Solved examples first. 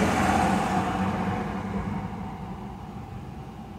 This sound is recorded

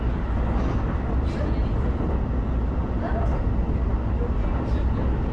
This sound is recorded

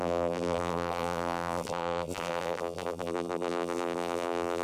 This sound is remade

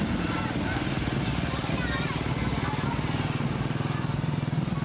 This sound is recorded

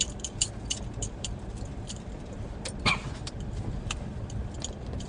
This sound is remade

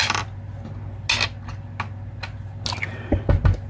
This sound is recorded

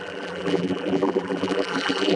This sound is remade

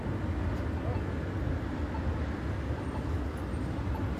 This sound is recorded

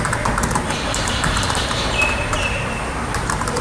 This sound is remade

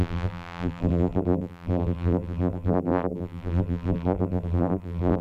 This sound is remade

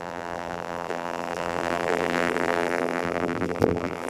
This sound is remade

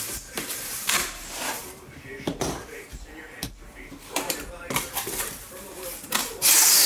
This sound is remade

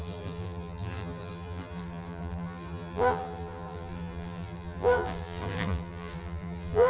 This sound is remade